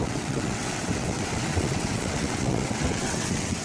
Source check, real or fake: fake